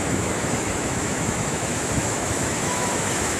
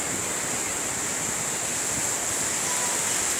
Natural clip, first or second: second